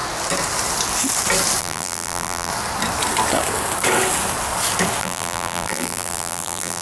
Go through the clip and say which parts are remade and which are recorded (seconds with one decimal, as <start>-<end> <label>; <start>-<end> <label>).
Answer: 0.0-1.6 recorded; 1.6-2.5 remade; 2.5-5.0 recorded; 5.0-6.8 remade